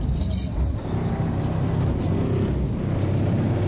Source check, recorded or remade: recorded